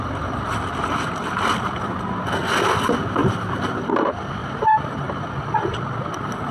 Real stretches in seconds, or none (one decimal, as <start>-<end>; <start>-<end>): 0.0-3.2; 3.9-4.4; 5.3-6.5